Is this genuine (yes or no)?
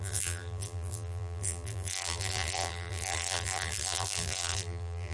no